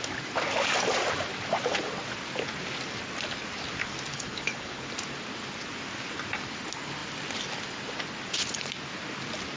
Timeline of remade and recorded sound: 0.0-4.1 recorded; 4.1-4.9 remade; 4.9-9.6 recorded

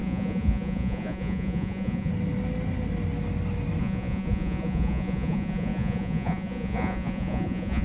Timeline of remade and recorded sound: 0.0-2.1 remade; 2.1-3.8 recorded; 3.8-7.8 remade